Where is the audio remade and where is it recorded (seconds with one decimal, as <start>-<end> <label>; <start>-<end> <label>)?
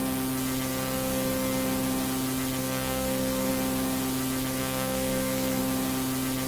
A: 0.0-2.6 recorded; 2.6-3.5 remade; 3.5-4.6 recorded; 4.6-5.6 remade; 5.6-6.5 recorded